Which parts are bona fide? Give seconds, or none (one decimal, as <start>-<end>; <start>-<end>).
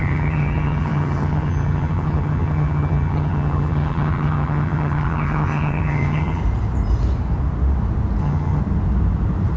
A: 6.4-8.2; 8.6-9.6